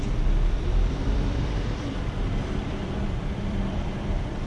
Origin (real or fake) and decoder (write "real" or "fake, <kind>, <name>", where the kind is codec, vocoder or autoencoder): fake, vocoder, BigVGAN v2